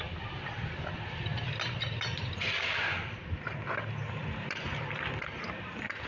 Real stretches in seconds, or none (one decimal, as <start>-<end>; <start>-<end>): 3.2-4.1